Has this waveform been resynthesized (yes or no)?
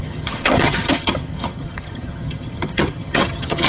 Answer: yes